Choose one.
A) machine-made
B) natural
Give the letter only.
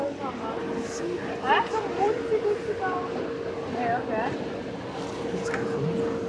B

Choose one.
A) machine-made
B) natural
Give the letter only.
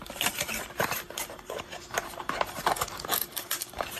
A